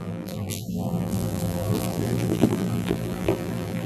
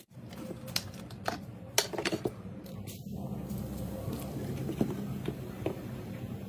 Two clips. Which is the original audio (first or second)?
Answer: second